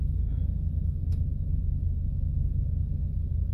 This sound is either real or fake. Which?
fake